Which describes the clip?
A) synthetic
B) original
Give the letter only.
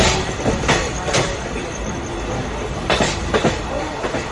B